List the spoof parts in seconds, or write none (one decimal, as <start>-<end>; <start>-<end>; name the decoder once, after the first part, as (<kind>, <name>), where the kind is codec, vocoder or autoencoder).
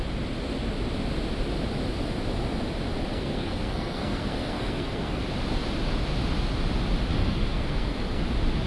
3.1-5.2 (codec, SNAC); 7.1-8.2